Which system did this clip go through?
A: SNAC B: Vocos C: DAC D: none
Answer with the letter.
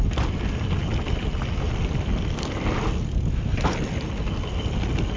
D